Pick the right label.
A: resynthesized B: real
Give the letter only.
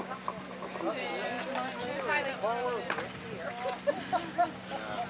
B